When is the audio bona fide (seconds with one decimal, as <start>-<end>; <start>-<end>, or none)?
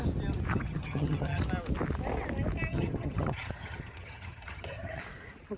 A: 0.0-0.5; 1.4-2.7; 5.0-5.6